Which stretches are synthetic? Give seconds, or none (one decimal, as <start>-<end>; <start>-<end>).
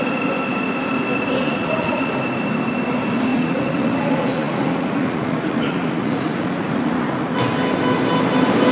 1.4-2.1; 3.3-7.4